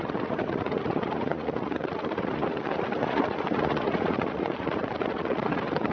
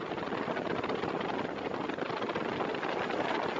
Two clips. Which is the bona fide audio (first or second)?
second